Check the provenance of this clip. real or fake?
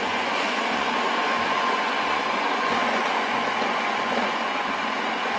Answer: fake